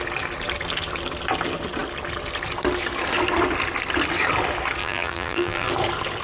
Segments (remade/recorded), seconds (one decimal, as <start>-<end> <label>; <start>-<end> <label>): 0.0-4.8 recorded; 4.8-5.7 remade; 5.7-6.2 recorded